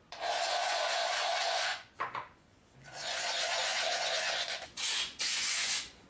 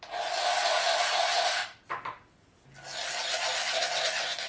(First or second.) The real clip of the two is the second